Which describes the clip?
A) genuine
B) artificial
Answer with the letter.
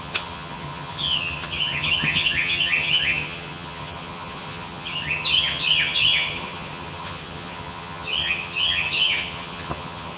B